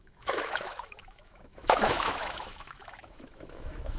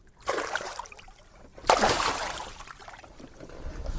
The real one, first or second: second